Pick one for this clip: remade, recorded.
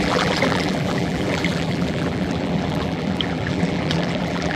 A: remade